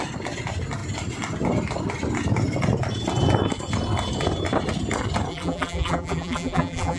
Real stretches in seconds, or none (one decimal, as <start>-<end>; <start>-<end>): 0.0-5.3